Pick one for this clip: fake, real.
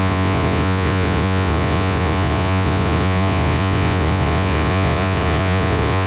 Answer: fake